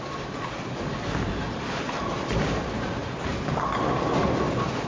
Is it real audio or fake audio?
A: real